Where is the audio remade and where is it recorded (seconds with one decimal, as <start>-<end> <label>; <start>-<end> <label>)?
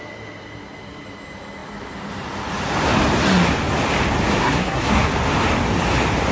0.0-4.4 recorded; 4.4-5.1 remade; 5.1-6.3 recorded